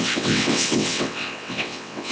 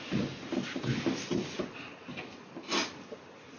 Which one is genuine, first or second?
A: second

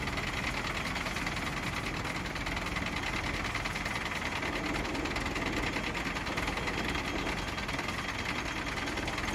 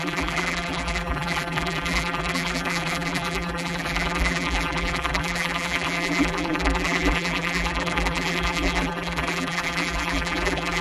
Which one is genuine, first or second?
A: first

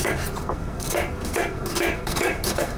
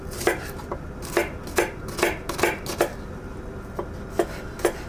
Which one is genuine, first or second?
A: second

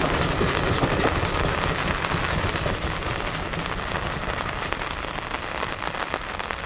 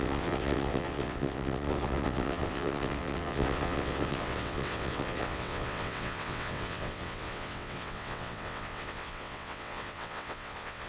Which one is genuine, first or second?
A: first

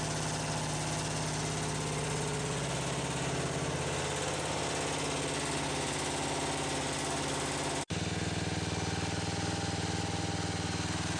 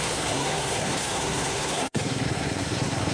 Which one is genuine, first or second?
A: first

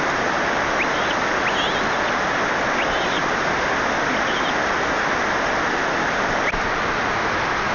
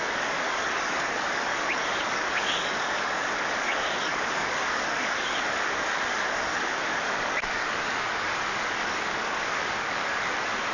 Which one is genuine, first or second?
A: first